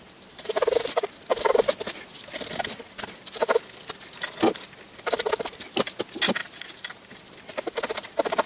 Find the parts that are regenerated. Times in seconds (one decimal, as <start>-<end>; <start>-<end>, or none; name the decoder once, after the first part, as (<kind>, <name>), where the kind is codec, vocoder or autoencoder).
none